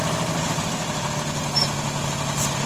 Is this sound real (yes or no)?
yes